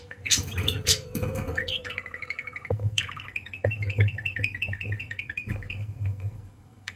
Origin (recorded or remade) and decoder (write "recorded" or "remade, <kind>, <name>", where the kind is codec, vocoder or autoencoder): remade, codec, SNAC